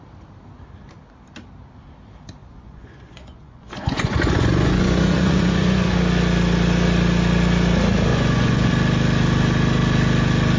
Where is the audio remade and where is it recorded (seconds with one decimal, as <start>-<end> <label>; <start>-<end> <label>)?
0.0-2.4 recorded; 2.4-5.9 remade; 5.9-8.1 recorded; 8.1-8.7 remade; 8.7-10.6 recorded